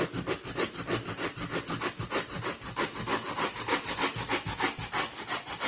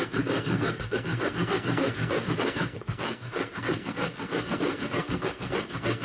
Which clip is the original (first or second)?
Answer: first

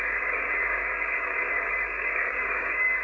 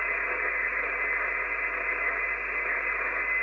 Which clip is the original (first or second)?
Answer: second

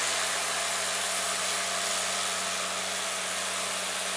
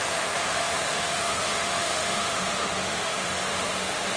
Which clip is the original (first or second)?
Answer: first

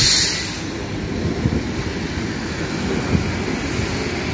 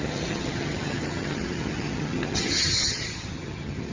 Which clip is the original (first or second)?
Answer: first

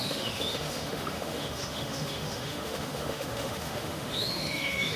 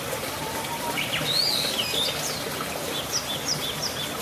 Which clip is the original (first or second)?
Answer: second